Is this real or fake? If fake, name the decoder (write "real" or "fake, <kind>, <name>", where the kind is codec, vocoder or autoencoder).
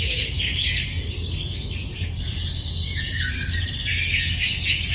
fake, codec, DAC